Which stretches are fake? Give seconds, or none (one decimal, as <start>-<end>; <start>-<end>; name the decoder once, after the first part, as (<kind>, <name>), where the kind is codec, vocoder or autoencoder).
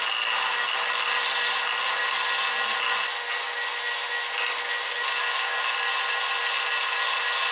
none